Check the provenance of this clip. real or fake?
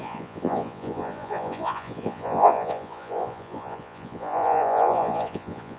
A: fake